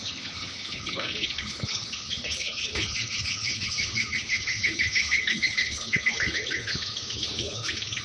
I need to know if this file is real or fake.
fake